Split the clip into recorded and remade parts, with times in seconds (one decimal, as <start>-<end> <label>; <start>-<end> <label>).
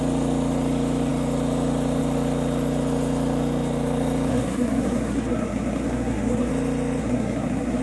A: 0.0-4.3 recorded; 4.3-6.5 remade; 6.5-7.0 recorded; 7.0-7.8 remade